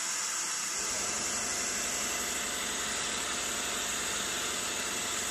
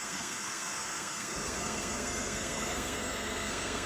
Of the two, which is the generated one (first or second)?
second